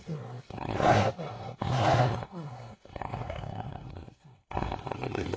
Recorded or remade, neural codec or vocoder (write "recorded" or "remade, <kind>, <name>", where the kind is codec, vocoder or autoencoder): remade, codec, SNAC